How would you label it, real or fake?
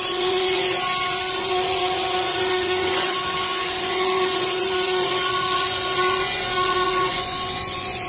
fake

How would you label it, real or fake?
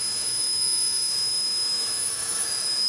fake